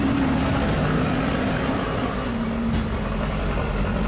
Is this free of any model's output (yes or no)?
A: yes